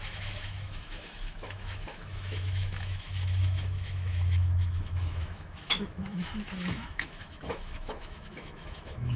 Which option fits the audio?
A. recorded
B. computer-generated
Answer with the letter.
B